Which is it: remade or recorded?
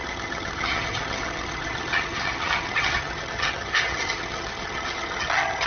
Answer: remade